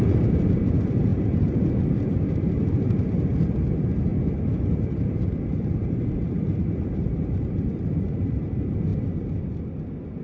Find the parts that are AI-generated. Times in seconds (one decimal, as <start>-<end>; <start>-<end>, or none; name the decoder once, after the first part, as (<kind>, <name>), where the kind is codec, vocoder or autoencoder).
0.0-4.1 (vocoder, BigVGAN v2); 4.7-8.9